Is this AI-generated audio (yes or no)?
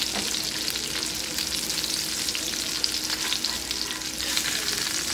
no